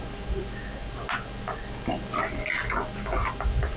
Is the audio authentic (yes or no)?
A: yes